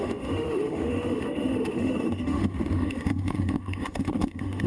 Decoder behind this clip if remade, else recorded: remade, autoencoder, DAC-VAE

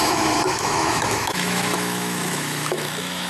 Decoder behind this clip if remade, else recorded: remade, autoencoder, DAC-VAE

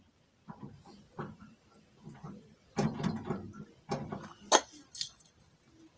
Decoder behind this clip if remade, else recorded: recorded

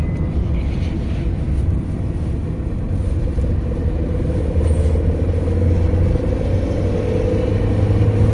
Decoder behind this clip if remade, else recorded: recorded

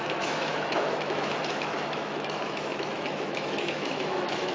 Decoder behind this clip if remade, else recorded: remade, autoencoder, DAC-VAE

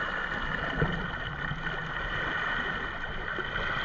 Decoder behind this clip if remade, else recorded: recorded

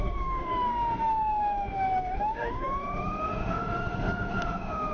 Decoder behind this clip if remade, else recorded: remade, autoencoder, DAC-VAE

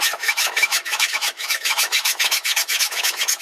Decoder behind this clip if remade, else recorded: remade, autoencoder, DAC-VAE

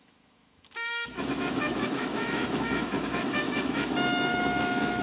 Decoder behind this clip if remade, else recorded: remade, autoencoder, DAC-VAE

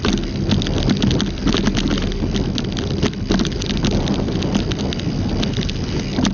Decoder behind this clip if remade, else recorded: recorded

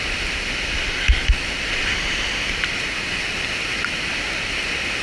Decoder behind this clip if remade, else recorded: recorded